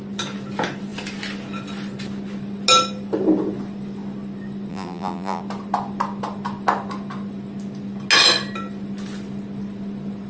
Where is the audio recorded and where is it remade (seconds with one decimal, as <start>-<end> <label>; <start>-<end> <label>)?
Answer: 0.0-4.7 recorded; 4.7-5.4 remade; 5.4-10.3 recorded